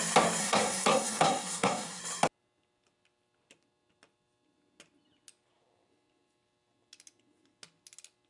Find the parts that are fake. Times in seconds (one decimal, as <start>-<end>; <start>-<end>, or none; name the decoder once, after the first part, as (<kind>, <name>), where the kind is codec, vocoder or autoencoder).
0.4-2.0 (codec, SNAC)